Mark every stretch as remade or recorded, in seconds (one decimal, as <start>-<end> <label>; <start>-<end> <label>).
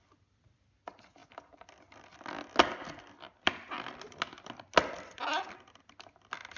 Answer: 0.0-6.6 recorded